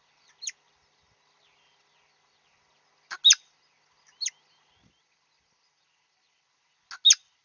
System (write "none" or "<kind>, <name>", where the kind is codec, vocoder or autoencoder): none